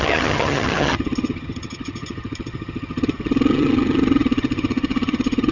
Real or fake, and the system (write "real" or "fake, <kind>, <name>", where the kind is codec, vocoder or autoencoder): fake, vocoder, HiFi-GAN